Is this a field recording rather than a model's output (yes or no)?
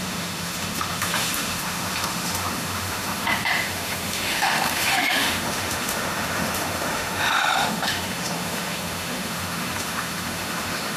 no